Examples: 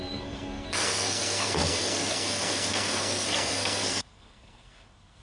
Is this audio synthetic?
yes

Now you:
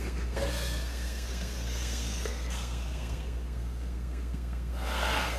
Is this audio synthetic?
yes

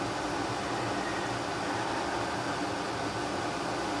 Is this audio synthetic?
no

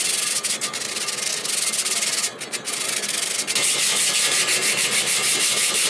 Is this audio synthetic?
no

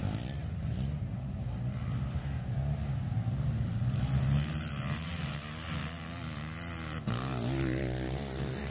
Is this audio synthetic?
no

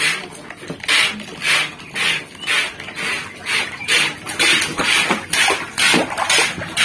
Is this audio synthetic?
no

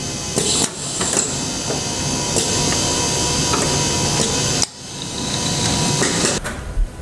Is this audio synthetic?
no